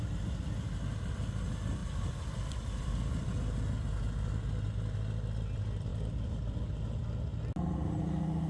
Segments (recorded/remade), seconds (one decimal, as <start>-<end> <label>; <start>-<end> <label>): 0.0-1.8 recorded; 1.8-3.3 remade; 3.3-5.9 recorded; 5.9-6.6 remade; 6.6-8.5 recorded